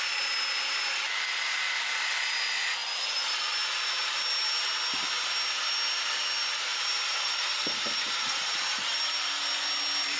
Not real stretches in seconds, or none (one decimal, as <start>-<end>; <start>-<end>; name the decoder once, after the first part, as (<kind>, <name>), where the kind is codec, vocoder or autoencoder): 6.7-8.6 (vocoder, BigVGAN v2)